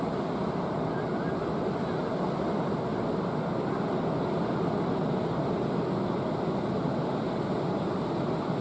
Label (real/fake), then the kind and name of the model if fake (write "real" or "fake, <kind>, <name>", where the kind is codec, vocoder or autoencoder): real